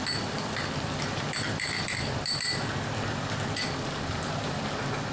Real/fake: real